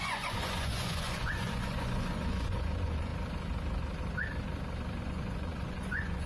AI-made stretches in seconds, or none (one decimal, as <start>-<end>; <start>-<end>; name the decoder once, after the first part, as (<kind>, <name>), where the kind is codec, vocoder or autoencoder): 0.0-3.1 (vocoder, Vocos); 5.0-6.3

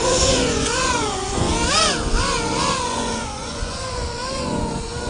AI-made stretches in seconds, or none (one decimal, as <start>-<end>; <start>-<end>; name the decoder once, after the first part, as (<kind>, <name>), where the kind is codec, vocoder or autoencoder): 0.0-1.5 (vocoder, Vocos); 2.8-5.1

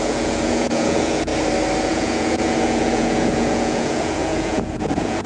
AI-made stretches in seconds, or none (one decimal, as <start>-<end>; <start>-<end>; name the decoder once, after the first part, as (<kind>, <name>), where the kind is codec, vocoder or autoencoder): 0.0-1.3 (vocoder, Vocos); 1.8-5.3

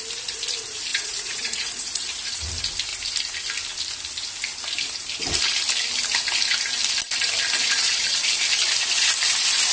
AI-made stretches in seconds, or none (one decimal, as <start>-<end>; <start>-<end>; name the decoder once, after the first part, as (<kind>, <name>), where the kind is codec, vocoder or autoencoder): 0.9-2.5 (vocoder, Vocos); 7.6-8.2

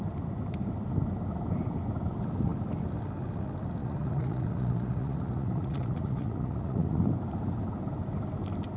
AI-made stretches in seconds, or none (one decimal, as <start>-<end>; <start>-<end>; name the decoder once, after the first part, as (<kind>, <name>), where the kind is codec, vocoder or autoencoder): 3.8-7.1 (vocoder, Vocos)

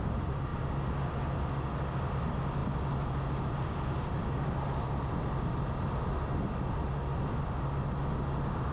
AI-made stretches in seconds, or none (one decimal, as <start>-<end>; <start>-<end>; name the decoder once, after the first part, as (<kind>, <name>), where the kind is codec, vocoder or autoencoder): none

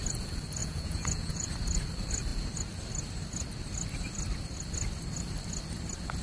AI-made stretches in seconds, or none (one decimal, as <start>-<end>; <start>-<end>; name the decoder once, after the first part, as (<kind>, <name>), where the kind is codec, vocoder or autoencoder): 0.6-1.5 (vocoder, Vocos)

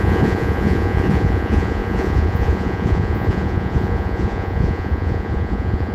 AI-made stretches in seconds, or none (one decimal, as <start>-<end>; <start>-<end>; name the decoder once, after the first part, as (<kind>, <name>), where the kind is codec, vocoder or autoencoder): 0.0-5.9 (vocoder, Vocos)